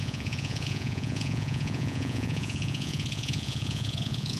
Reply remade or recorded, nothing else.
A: remade